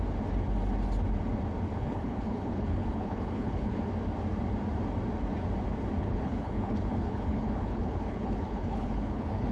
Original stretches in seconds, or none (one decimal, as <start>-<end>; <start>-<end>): 0.0-1.7; 3.8-6.0